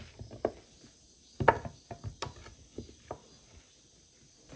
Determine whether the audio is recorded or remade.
recorded